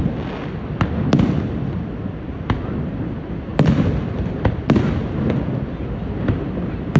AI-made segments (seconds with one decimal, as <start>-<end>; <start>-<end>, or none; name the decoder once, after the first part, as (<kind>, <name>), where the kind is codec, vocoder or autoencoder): none